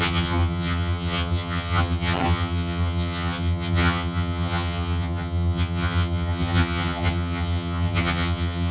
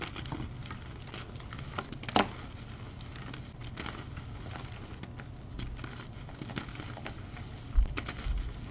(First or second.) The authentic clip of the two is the second